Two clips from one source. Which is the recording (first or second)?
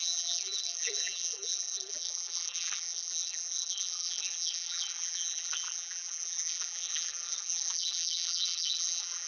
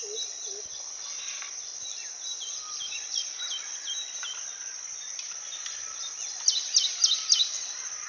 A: second